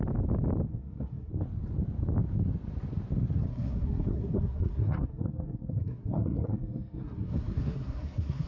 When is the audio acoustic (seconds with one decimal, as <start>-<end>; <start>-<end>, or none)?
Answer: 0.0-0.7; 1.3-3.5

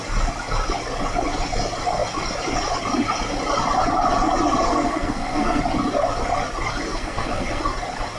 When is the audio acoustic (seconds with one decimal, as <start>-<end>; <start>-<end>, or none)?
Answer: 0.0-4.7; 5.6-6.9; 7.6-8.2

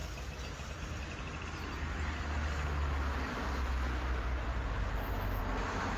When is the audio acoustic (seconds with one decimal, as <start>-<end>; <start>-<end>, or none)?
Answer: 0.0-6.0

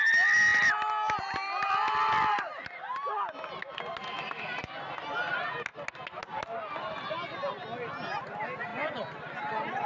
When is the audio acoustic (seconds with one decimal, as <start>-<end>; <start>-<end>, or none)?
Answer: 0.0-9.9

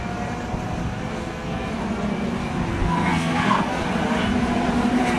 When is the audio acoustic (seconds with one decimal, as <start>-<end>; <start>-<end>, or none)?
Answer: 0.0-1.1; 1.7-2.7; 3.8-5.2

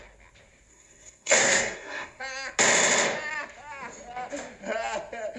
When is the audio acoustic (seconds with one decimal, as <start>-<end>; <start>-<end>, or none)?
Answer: 0.0-0.7; 2.2-5.4